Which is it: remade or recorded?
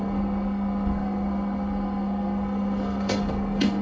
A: remade